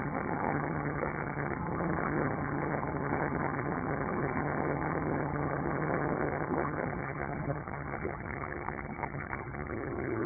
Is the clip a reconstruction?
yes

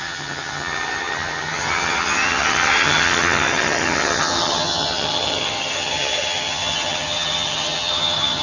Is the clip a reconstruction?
yes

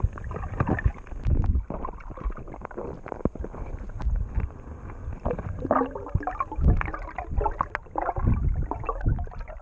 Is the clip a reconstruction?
no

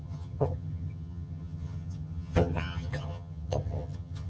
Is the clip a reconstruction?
yes